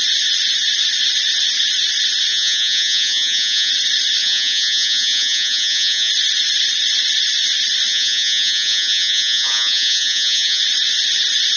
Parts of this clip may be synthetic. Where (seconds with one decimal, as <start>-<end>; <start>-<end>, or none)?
2.3-3.7; 4.2-6.1; 7.9-10.6